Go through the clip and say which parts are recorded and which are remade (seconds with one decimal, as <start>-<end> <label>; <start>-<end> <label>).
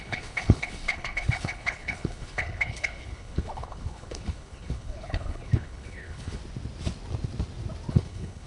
0.0-6.4 remade; 6.4-7.9 recorded; 7.9-8.5 remade